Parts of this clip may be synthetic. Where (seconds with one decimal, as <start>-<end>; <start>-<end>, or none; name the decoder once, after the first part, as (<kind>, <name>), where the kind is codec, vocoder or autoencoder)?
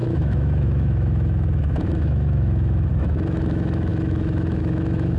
0.0-5.2 (autoencoder, DAC-VAE)